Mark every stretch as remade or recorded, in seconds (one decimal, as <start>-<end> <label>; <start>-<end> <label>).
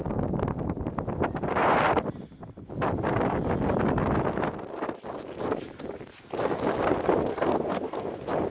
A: 0.0-7.3 recorded; 7.3-8.0 remade; 8.0-8.5 recorded